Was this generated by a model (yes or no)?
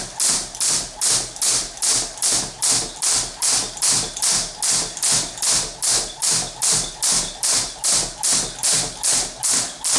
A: no